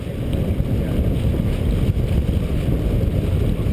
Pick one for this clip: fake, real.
real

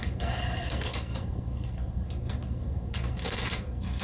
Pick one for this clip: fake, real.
fake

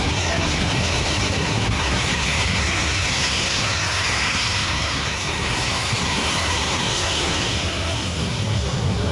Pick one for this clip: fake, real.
fake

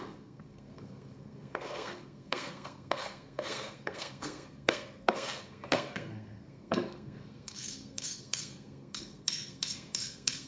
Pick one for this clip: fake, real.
fake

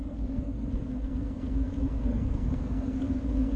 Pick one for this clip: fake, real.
fake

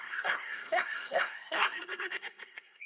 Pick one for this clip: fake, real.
fake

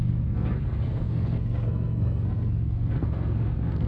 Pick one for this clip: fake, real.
fake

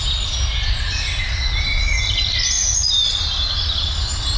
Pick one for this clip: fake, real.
real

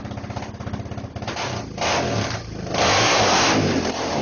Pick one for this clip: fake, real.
real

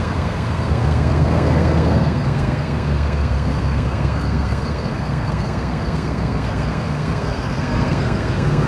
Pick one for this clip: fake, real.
fake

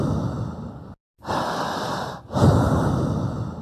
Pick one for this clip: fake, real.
real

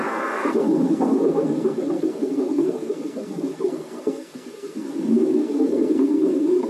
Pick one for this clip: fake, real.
fake